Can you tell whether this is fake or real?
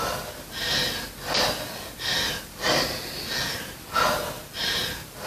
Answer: real